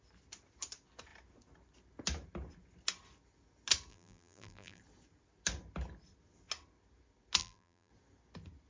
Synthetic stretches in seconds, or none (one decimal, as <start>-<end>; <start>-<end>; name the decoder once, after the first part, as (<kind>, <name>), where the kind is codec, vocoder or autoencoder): 3.9-4.8 (vocoder, BigVGAN v2); 7.4-7.9